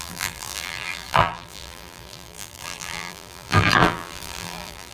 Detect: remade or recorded remade